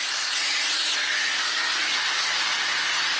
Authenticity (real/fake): real